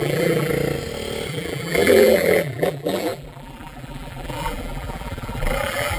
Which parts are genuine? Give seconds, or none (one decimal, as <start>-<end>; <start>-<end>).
0.5-1.3